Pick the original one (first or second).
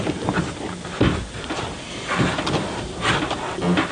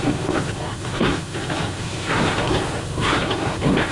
first